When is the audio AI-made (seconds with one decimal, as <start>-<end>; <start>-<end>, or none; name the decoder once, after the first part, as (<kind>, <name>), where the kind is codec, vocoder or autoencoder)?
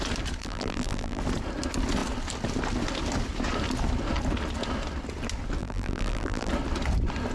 0.4-1.2 (vocoder, BigVGAN v2); 5.6-6.5